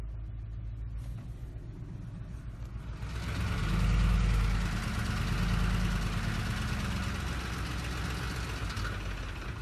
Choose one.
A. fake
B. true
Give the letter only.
B